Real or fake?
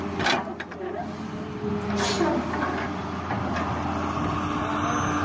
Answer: real